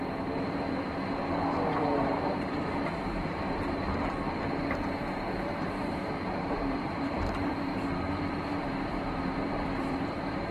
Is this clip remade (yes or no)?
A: yes